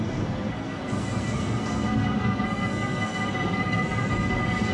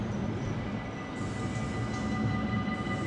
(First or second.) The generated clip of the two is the first